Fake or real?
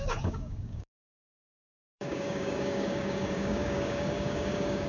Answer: fake